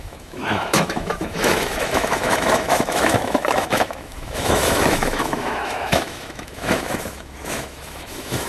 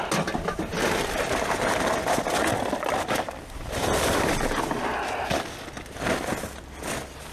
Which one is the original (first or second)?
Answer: second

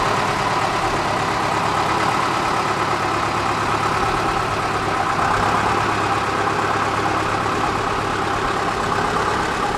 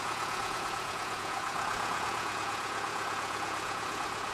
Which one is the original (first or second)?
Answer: first